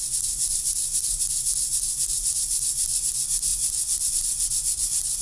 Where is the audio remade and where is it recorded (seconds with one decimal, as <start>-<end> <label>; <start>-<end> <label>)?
0.0-5.2 remade